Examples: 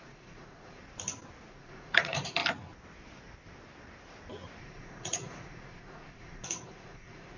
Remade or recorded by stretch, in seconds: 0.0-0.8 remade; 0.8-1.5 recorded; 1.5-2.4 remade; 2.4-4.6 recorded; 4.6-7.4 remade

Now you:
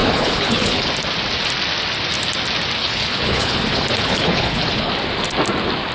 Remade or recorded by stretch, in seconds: 0.0-0.9 remade; 0.9-2.8 recorded; 2.8-4.9 remade; 4.9-5.9 recorded

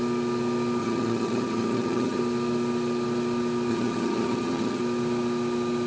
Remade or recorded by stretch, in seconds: 0.0-0.8 recorded; 0.8-2.2 remade; 2.2-3.7 recorded; 3.7-4.8 remade; 4.8-5.9 recorded

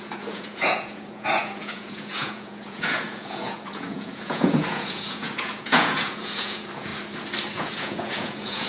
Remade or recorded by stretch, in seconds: 0.0-6.9 remade; 6.9-7.5 recorded; 7.5-8.7 remade

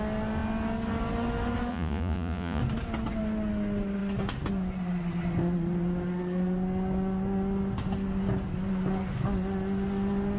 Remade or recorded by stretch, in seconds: 0.0-1.7 recorded; 1.7-2.6 remade; 2.6-10.4 recorded

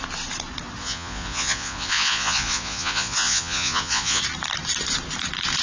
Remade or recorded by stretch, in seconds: 0.0-0.8 recorded; 0.8-4.2 remade; 4.2-5.6 recorded

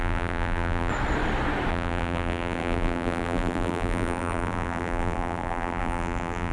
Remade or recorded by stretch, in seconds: 0.0-0.9 remade; 0.9-1.7 recorded; 1.7-6.5 remade